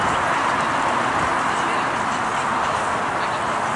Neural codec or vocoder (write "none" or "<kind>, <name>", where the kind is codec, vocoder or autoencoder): none